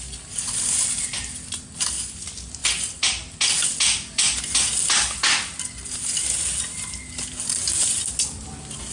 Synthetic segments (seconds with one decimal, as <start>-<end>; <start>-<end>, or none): none

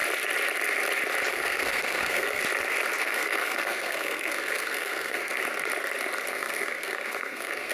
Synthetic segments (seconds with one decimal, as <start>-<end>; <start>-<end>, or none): 1.3-2.4; 3.0-5.4; 6.3-7.7

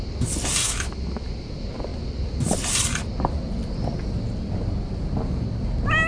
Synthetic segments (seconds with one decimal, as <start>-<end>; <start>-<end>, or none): 0.6-1.3

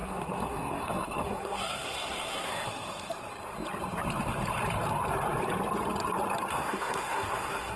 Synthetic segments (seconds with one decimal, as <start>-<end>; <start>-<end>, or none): 0.0-2.5; 6.5-7.8